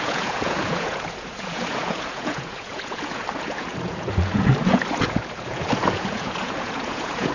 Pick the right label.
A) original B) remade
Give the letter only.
B